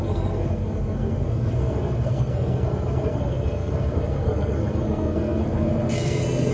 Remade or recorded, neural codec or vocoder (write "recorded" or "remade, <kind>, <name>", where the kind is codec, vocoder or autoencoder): remade, codec, SNAC